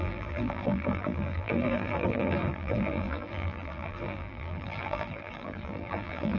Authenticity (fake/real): fake